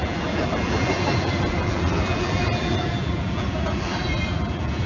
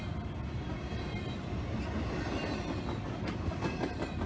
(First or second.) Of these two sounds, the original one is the second